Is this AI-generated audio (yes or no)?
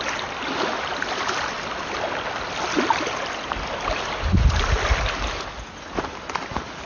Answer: no